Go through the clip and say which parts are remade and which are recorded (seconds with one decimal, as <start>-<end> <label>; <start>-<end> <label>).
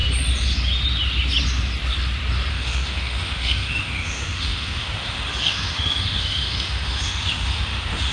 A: 0.0-2.5 recorded; 2.5-8.1 remade